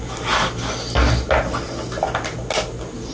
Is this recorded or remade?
recorded